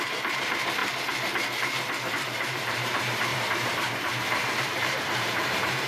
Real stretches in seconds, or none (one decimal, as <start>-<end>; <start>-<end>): 0.8-2.1